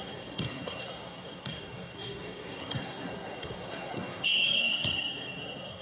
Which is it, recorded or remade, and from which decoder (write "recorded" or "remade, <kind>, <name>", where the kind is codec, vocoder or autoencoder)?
remade, codec, SNAC